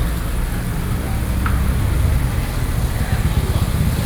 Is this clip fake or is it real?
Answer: real